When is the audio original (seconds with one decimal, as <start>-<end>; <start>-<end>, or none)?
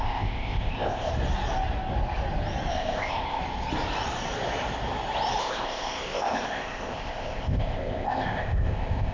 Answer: 1.1-2.7; 3.4-5.4